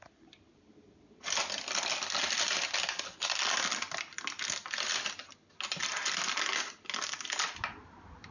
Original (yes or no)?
yes